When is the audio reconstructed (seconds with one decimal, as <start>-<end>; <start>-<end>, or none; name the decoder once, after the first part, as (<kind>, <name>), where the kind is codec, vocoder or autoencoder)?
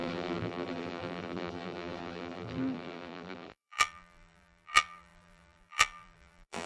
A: 0.0-6.7 (vocoder, BigVGAN v2)